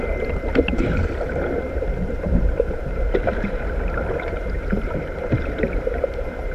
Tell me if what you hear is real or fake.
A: fake